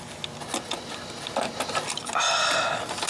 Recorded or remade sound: recorded